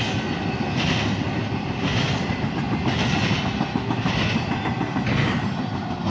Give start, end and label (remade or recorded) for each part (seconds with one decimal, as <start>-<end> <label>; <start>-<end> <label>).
0.0-6.1 recorded